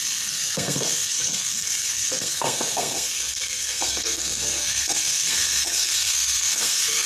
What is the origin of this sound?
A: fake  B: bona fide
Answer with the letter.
A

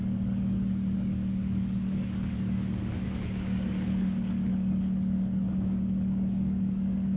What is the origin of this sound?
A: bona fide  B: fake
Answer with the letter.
B